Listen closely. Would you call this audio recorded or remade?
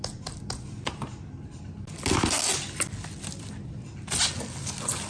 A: recorded